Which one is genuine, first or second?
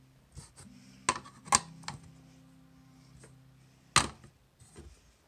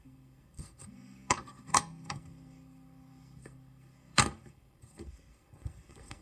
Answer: first